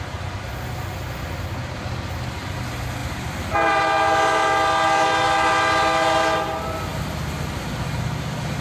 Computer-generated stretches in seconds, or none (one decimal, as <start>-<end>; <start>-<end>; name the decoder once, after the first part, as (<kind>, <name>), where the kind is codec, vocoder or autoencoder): none